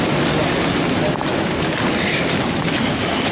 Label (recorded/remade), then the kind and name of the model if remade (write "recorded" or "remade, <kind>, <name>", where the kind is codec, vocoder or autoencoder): recorded